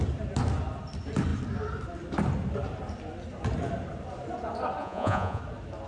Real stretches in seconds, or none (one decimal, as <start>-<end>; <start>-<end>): 0.0-4.8; 5.4-5.9